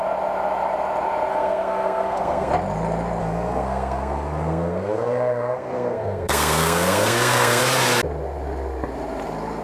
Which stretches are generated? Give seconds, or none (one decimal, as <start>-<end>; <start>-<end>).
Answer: 1.3-2.5; 3.2-7.6